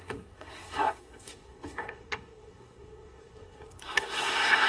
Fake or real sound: fake